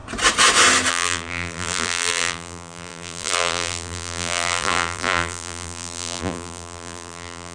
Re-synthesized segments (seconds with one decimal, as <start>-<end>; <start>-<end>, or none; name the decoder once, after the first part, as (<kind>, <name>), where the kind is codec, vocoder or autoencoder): 0.9-7.5 (vocoder, BigVGAN v2)